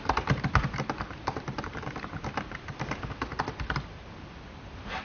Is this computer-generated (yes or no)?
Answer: no